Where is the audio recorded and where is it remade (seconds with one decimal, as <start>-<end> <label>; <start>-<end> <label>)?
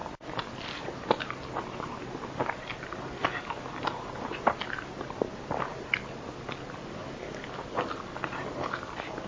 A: 0.0-9.3 recorded